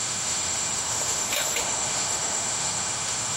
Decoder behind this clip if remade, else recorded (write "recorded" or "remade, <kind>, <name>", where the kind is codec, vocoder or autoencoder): remade, autoencoder, DAC-VAE